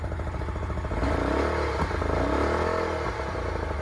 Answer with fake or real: real